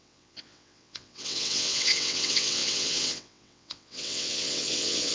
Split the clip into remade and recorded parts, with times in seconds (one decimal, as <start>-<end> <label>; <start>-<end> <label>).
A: 0.0-5.1 remade